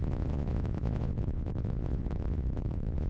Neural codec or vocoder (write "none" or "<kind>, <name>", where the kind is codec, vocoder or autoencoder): vocoder, Vocos